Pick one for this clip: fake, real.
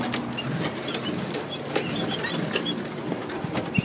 real